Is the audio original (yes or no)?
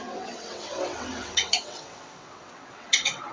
no